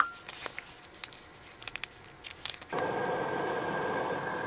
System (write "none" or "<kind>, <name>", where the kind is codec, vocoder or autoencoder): none